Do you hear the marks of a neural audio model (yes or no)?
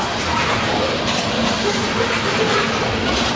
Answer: no